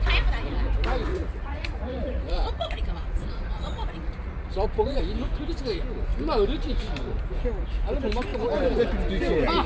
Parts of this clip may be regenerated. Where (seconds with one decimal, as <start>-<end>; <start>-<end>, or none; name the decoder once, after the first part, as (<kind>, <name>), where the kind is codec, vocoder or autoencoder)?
1.1-5.0 (vocoder, Vocos)